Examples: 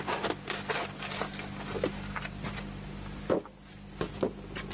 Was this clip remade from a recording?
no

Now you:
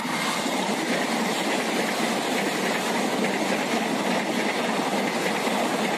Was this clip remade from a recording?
no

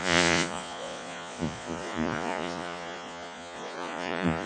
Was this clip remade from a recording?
yes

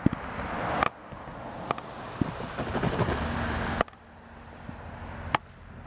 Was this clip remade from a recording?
no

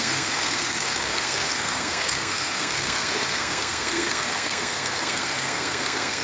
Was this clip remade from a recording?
yes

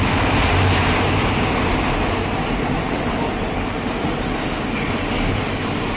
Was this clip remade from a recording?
no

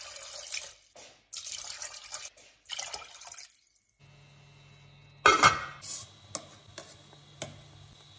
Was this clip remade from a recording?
no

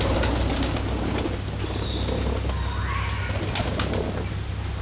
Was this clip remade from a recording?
no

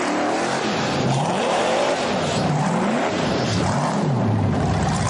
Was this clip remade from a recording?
yes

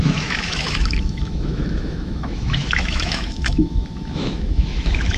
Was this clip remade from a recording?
yes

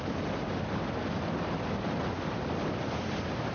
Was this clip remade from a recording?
no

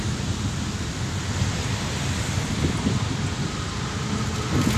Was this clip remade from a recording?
no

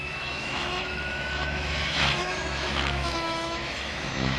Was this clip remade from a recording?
yes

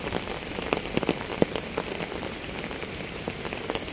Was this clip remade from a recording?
no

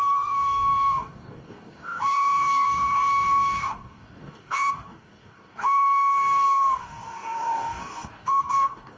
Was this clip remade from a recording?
yes